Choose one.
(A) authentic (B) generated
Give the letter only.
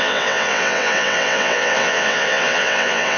B